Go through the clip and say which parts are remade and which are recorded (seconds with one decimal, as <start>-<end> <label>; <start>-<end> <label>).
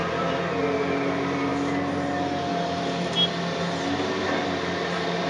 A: 0.0-0.5 remade; 0.5-5.3 recorded